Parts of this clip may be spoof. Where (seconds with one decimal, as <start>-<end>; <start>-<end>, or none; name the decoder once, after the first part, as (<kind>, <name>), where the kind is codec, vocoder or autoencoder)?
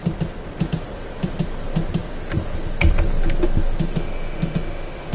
3.9-5.1 (autoencoder, DAC-VAE)